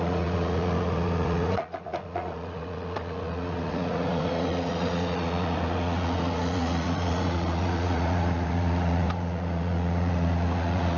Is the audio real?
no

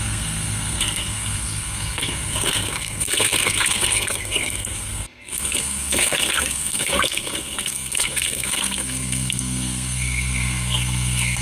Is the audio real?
no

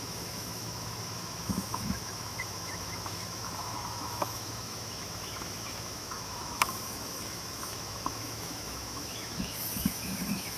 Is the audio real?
no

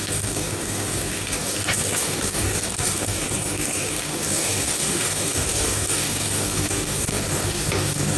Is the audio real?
no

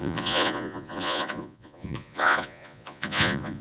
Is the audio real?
no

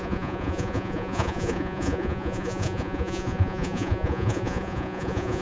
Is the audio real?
no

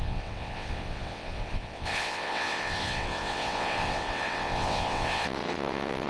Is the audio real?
no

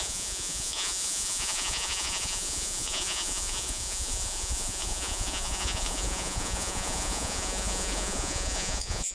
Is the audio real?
no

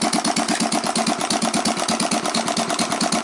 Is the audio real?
yes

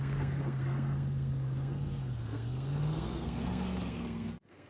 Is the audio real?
no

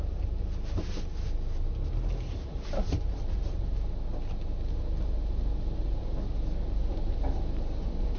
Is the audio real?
yes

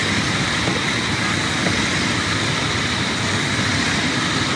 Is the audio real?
yes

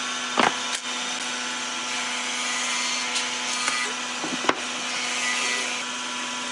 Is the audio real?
yes